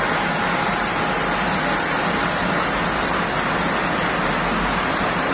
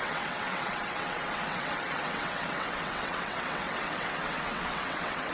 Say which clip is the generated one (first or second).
second